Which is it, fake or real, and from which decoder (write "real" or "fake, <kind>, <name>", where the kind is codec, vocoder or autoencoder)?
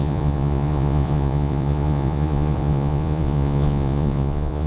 fake, vocoder, Vocos